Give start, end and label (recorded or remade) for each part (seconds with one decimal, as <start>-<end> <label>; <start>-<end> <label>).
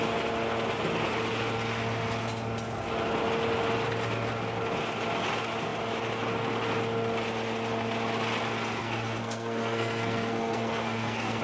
0.0-8.8 recorded; 8.8-11.4 remade